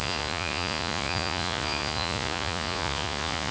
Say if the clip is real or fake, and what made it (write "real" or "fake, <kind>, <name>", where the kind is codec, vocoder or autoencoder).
fake, vocoder, Vocos